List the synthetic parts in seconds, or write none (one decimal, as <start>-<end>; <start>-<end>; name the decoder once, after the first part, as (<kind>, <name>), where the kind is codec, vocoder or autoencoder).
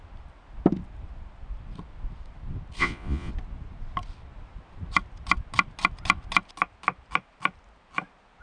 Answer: 2.8-3.3 (vocoder, Vocos)